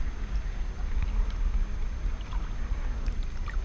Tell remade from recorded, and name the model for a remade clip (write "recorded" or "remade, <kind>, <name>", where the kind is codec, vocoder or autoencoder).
recorded